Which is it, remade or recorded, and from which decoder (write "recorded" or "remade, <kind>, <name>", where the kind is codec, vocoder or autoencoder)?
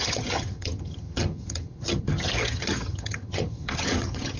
remade, vocoder, HiFi-GAN